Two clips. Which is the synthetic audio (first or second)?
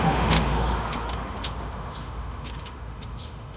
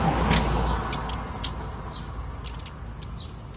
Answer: first